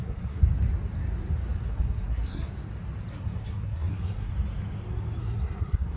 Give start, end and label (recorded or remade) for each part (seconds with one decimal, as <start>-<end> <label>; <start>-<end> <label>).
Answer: 0.0-0.4 remade; 0.4-1.7 recorded; 1.7-2.5 remade; 2.5-3.1 recorded; 3.1-4.3 remade; 4.3-5.2 recorded; 5.2-6.0 remade